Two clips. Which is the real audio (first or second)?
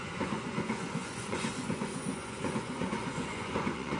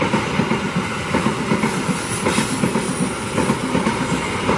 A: second